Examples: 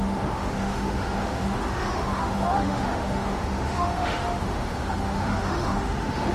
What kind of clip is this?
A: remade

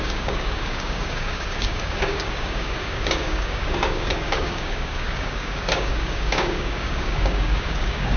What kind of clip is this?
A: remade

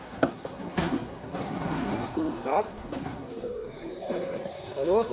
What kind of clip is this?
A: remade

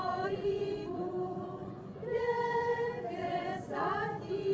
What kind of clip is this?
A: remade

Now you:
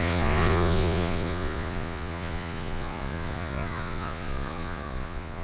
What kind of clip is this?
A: remade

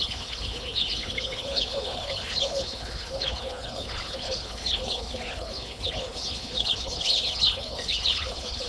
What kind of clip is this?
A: remade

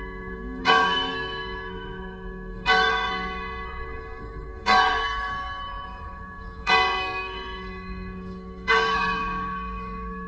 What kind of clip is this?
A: remade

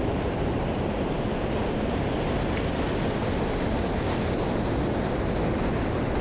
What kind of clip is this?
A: recorded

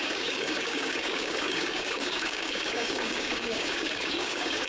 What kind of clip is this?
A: remade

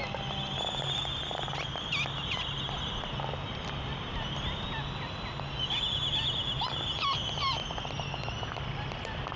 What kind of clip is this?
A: recorded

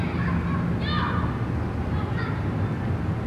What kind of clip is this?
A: recorded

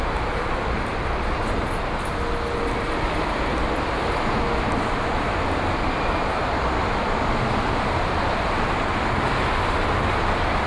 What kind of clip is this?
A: recorded